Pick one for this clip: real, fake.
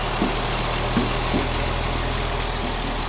real